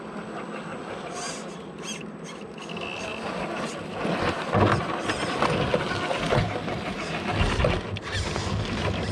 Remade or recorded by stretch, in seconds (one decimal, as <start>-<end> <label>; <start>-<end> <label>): 0.0-9.1 recorded